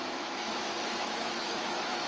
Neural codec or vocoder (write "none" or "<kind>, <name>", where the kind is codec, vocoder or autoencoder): autoencoder, DAC-VAE